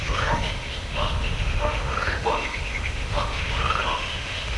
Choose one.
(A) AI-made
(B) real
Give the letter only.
A